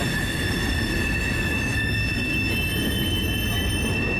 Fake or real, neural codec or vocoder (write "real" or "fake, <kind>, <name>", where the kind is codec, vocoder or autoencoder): real